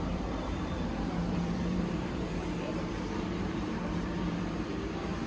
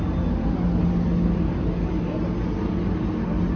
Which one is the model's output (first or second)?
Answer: first